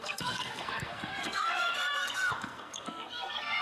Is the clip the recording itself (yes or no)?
no